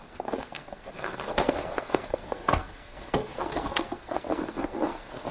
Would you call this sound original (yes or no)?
no